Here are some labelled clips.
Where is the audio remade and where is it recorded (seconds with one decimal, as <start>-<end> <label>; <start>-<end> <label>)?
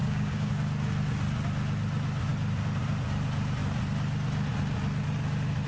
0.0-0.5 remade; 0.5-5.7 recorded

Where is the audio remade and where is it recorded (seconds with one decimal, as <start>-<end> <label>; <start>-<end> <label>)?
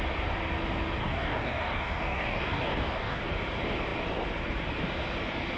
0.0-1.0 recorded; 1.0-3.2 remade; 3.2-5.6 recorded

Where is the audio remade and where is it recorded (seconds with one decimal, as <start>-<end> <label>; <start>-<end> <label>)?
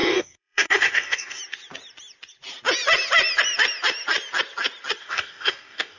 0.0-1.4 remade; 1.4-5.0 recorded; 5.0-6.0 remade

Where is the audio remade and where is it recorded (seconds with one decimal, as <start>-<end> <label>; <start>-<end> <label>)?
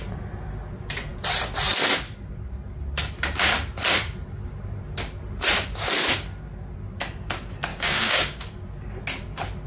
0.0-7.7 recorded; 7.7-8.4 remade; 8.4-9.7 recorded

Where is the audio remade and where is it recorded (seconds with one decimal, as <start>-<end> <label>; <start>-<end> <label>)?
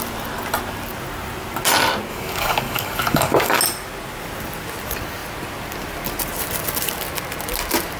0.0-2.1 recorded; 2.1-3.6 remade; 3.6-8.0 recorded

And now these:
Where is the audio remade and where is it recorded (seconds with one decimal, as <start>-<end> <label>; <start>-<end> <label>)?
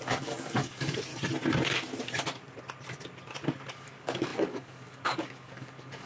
0.0-1.1 remade; 1.1-3.7 recorded; 3.7-6.1 remade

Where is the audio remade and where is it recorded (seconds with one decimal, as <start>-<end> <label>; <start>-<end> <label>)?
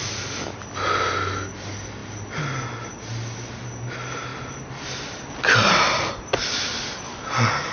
0.0-7.7 recorded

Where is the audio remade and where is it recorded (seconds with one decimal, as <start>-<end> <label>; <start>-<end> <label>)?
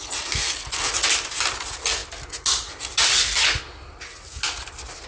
0.0-5.1 recorded